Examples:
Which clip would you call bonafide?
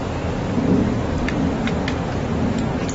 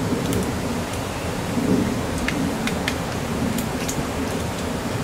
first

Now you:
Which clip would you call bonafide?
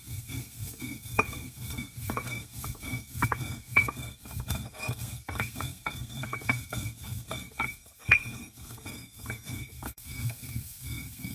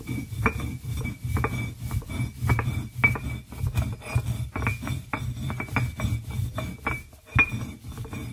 second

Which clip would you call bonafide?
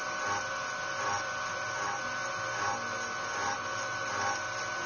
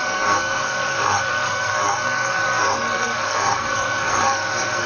first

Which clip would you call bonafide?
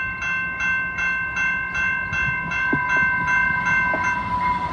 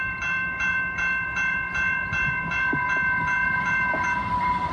first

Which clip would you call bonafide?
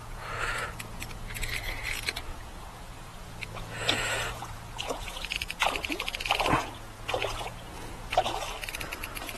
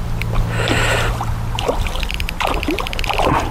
second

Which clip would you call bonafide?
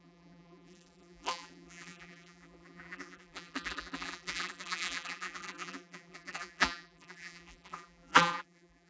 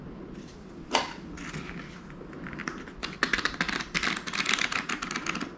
second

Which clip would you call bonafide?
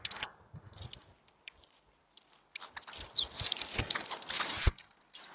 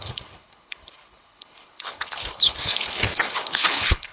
first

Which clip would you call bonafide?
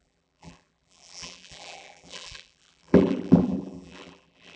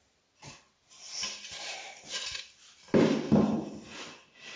second